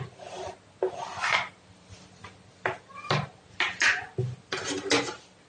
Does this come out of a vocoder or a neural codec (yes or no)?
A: no